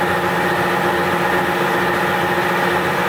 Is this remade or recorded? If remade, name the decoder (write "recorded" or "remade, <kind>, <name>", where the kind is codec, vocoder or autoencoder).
recorded